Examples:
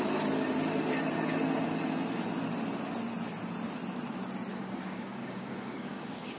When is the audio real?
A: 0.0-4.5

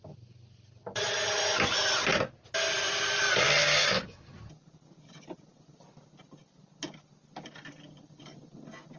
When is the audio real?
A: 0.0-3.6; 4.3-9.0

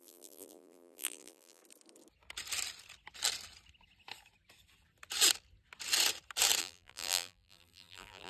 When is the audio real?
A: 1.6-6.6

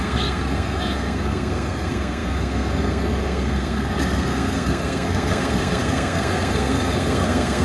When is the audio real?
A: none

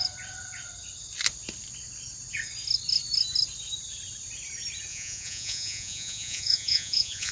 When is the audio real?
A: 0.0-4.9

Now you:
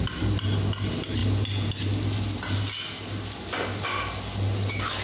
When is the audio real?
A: 0.0-5.0